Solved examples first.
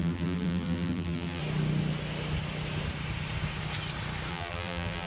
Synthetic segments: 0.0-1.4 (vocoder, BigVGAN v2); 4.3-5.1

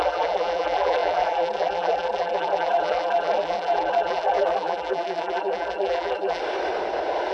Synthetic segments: 0.0-6.4 (vocoder, BigVGAN v2)

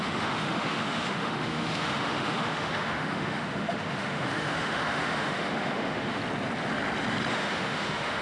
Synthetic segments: 0.0-6.2 (autoencoder, DAC-VAE); 7.3-8.2